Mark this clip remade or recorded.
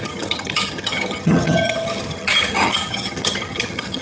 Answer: remade